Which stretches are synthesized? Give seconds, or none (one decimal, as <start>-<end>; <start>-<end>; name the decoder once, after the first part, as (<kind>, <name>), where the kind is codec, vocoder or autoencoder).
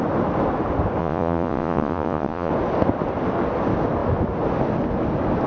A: 1.0-2.5 (vocoder, Vocos)